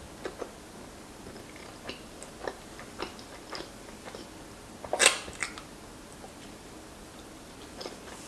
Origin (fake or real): real